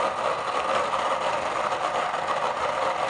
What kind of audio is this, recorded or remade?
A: recorded